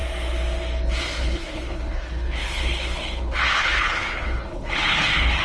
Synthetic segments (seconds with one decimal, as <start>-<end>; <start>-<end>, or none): 1.0-5.4